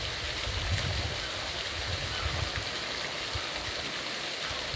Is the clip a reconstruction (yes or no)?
no